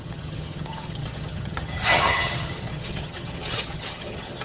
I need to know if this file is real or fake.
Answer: fake